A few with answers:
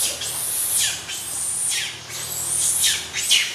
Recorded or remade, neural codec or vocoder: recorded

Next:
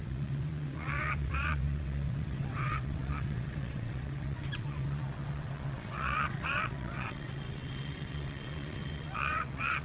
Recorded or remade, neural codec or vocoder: remade, vocoder, WaveNeXt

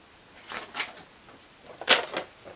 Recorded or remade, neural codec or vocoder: recorded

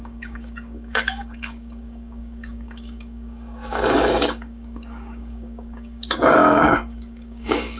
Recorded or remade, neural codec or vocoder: remade, codec, DAC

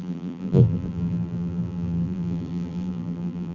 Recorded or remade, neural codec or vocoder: remade, vocoder, BigVGAN v2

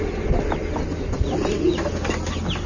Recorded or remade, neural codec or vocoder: recorded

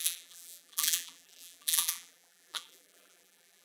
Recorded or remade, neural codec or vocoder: remade, vocoder, BigVGAN v2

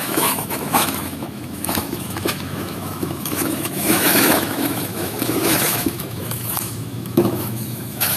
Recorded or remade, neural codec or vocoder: remade, autoencoder, DAC-VAE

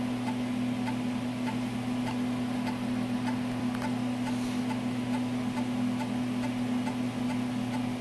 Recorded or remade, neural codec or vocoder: recorded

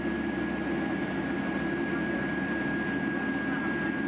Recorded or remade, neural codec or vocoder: recorded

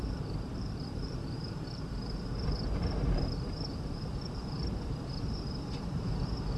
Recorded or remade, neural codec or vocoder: remade, vocoder, BigVGAN v2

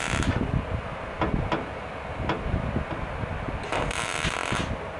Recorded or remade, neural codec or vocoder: recorded